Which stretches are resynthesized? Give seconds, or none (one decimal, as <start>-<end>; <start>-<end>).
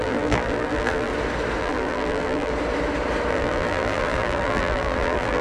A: 0.0-1.1; 1.6-2.5; 3.3-5.4